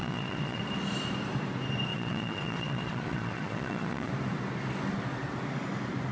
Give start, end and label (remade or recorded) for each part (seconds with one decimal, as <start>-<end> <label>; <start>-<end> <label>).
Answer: 0.0-0.6 remade; 0.6-1.9 recorded; 1.9-4.1 remade; 4.1-6.1 recorded